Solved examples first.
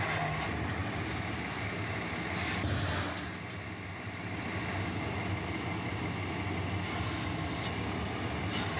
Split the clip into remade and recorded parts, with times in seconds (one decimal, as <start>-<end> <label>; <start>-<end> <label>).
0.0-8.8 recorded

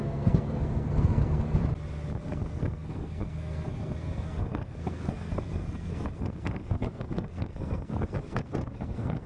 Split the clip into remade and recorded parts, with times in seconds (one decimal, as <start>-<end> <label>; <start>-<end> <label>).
0.0-1.6 remade; 1.6-2.2 recorded; 2.2-9.3 remade

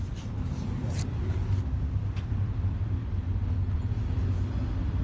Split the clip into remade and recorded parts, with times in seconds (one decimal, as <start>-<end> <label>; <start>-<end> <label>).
0.0-3.0 recorded; 3.0-3.8 remade; 3.8-5.0 recorded

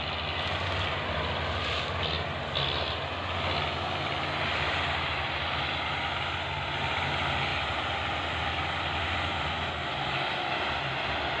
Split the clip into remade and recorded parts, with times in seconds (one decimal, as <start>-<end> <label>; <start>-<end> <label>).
0.0-11.4 recorded